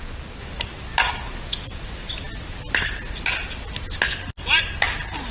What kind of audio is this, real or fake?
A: real